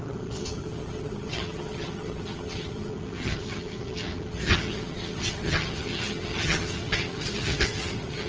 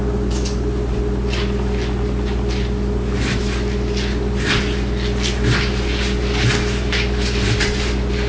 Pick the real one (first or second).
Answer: second